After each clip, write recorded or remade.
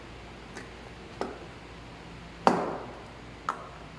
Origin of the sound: recorded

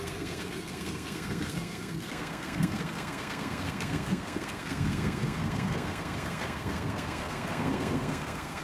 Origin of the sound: remade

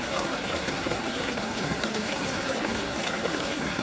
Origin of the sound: remade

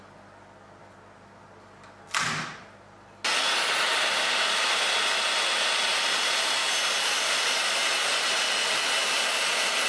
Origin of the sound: recorded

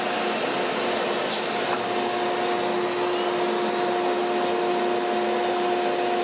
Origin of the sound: recorded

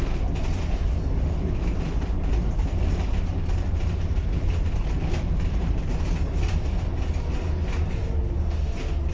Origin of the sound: recorded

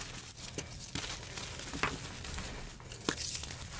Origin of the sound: recorded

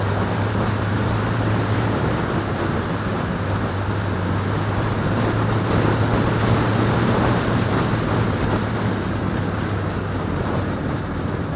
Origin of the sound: remade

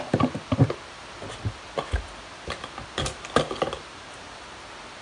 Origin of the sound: recorded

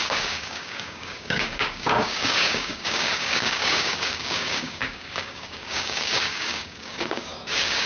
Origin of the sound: remade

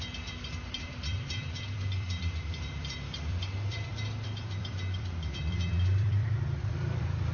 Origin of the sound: remade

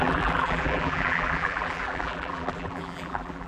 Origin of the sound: remade